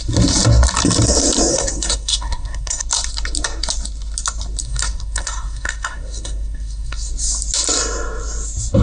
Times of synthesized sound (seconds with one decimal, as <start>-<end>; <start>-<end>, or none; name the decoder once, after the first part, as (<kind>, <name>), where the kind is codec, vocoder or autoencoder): 1.5-2.8 (codec, SNAC); 4.6-7.1